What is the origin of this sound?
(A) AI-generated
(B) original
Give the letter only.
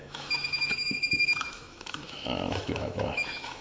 A